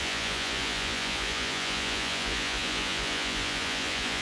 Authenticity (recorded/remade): remade